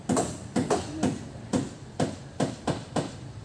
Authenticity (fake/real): real